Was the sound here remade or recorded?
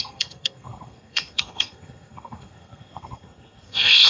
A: remade